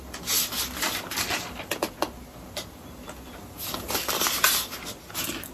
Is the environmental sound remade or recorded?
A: recorded